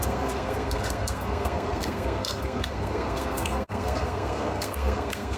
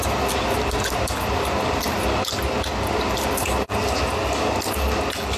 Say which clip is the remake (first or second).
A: first